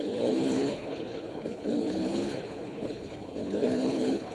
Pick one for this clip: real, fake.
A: fake